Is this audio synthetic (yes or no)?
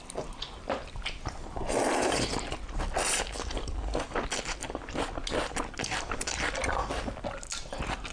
no